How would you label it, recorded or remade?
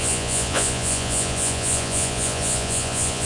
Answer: remade